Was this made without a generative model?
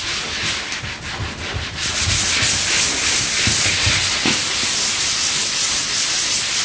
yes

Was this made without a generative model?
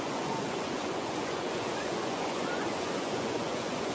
no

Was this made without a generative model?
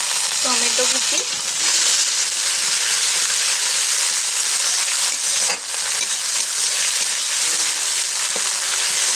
yes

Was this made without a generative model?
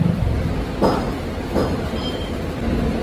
yes